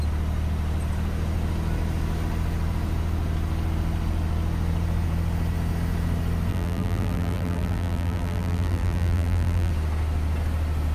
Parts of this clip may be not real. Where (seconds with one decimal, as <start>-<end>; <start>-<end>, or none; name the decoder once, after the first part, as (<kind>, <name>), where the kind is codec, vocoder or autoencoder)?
6.5-9.7 (vocoder, BigVGAN v2)